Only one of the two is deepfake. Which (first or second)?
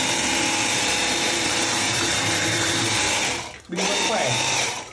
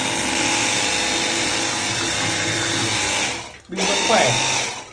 first